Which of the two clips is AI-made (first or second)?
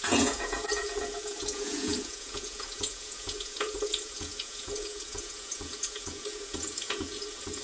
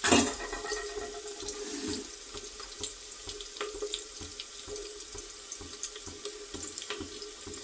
first